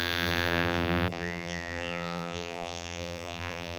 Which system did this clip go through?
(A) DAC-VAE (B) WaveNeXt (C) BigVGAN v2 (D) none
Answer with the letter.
C